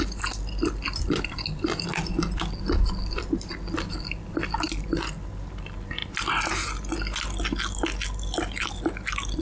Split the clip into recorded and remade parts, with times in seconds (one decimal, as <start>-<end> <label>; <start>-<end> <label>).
0.0-9.4 recorded